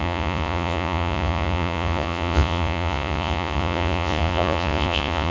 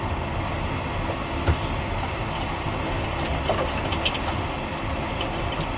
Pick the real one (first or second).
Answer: second